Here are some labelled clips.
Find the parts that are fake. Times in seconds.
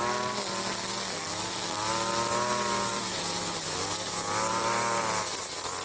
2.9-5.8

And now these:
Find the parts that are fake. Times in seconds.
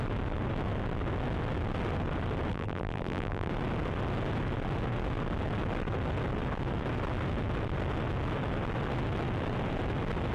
2.5-3.5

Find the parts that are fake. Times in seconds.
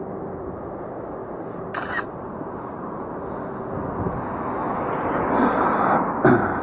1.2-3.2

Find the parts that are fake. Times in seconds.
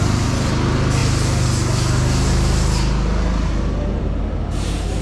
none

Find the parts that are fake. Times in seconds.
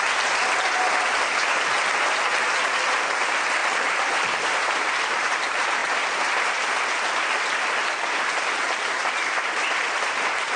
3.6-5.1; 5.8-6.4; 9.0-9.8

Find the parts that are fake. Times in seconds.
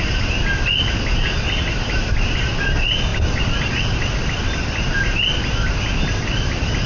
none